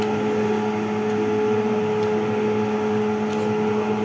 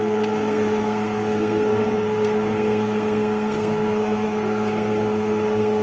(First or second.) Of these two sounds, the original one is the first